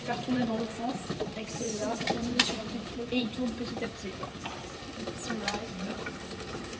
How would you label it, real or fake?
fake